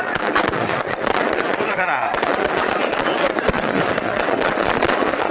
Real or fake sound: fake